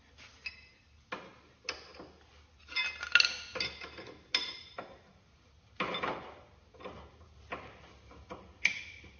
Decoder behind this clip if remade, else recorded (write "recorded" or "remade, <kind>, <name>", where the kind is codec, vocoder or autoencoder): recorded